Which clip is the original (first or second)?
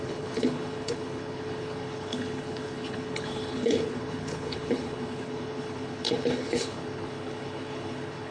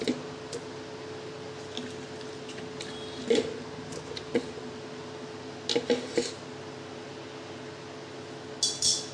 second